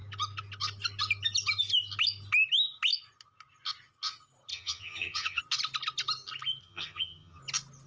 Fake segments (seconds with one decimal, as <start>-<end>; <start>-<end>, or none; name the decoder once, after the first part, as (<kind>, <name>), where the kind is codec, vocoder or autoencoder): 4.5-5.4 (vocoder, HiFi-GAN); 6.6-7.4